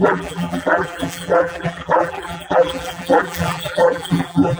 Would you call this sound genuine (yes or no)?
no